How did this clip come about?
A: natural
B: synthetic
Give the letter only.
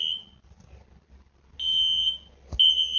A